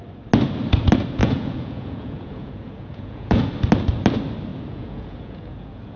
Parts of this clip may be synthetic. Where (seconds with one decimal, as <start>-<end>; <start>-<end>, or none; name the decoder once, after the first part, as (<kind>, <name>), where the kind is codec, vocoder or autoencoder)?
1.2-3.5 (vocoder, Vocos); 4.5-6.0